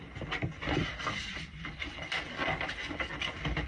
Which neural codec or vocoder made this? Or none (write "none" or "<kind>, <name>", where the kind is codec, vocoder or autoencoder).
none